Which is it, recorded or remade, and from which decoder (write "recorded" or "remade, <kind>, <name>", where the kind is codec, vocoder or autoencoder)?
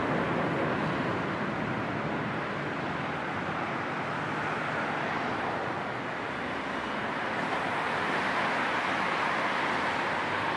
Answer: recorded